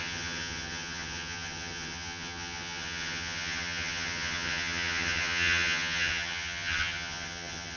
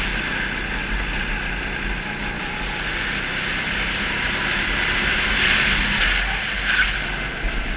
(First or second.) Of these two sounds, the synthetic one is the first